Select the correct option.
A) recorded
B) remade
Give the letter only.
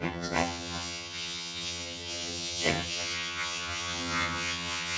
B